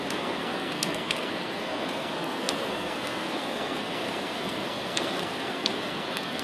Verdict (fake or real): fake